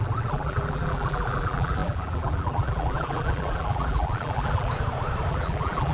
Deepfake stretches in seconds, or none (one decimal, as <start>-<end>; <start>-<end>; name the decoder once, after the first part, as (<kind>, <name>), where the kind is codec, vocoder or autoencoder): 0.0-4.7 (vocoder, BigVGAN v2); 5.3-5.9